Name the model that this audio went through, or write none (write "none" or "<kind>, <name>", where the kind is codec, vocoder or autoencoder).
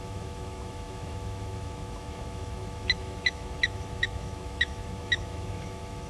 autoencoder, DAC-VAE